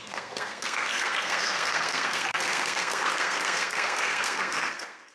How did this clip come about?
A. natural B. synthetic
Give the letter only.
B